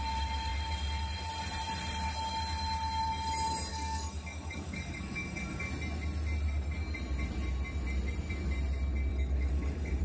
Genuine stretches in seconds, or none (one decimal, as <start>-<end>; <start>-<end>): 0.0-3.7; 5.7-9.1